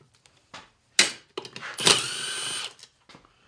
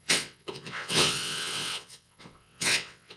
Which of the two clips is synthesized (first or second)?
second